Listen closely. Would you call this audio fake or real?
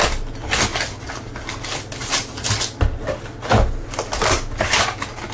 real